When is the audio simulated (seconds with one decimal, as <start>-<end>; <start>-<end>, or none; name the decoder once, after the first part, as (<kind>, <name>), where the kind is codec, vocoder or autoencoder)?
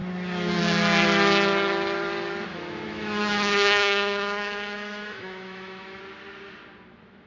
2.5-6.0 (autoencoder, DAC-VAE)